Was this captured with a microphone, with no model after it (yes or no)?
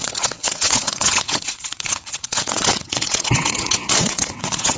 no